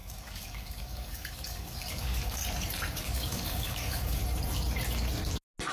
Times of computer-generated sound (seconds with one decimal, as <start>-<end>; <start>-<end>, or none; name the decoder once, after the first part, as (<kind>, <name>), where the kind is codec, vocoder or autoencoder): 0.0-2.4 (codec, DAC); 3.0-4.2